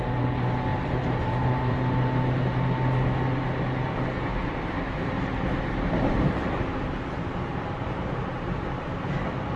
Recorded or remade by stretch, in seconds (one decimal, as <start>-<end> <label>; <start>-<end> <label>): 0.0-0.7 recorded; 0.7-2.5 remade; 2.5-4.3 recorded; 4.3-9.0 remade; 9.0-9.6 recorded